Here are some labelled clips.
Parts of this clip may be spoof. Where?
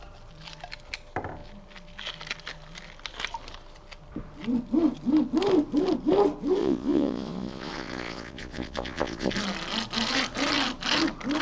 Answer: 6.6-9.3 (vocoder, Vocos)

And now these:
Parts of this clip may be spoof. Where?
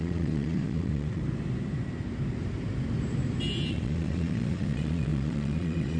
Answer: 0.0-1.2 (vocoder, Vocos); 3.7-6.0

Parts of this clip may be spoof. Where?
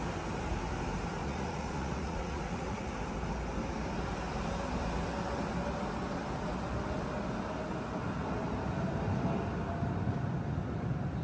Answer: 1.2-2.9 (vocoder, Vocos)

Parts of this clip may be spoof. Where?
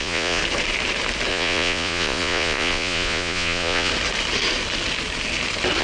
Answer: 0.0-0.4 (vocoder, Vocos); 1.3-3.9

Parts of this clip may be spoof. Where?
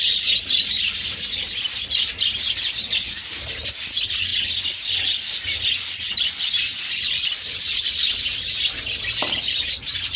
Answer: none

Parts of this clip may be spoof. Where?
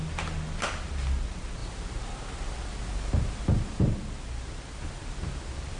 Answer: none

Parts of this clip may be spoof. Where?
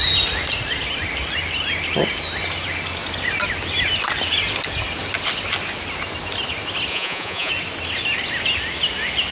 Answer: 6.9-7.5 (vocoder, Vocos)